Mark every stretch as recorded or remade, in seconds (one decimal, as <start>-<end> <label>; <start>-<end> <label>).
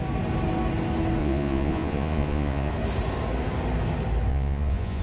0.0-1.2 recorded; 1.2-2.7 remade; 2.7-4.3 recorded; 4.3-5.0 remade